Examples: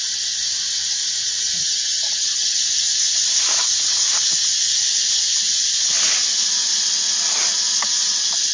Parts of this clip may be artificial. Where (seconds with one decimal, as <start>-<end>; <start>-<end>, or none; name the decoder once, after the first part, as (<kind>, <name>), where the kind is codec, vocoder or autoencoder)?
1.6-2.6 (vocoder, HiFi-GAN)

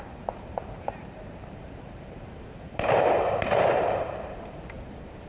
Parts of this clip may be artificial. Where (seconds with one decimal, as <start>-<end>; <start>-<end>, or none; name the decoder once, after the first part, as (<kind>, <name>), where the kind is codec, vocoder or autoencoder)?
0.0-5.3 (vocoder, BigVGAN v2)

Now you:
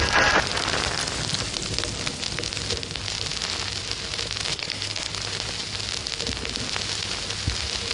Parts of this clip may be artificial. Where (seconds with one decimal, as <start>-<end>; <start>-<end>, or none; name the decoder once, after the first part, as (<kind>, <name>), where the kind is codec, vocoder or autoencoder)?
4.5-5.1 (codec, HILCodec)